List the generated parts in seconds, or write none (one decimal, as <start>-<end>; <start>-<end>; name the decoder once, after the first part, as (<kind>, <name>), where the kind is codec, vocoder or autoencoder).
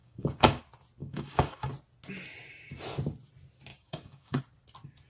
0.0-0.6 (codec, DAC); 1.0-1.7; 3.7-4.4